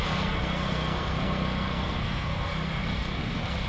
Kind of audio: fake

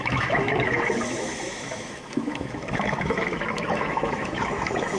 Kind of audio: fake